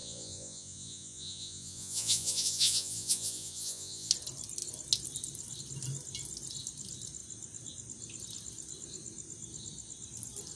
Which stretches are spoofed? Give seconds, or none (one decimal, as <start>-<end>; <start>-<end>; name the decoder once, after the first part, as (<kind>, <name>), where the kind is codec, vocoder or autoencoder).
0.0-4.1 (vocoder, Vocos)